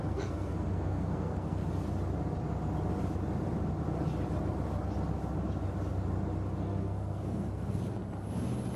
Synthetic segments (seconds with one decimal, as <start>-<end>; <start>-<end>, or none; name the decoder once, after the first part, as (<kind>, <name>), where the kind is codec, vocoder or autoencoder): 0.0-1.6 (codec, SNAC); 6.6-8.0